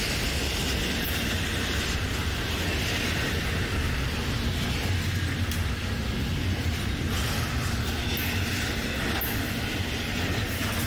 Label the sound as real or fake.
real